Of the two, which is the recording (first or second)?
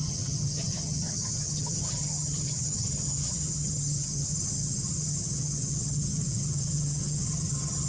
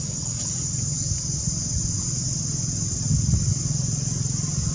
second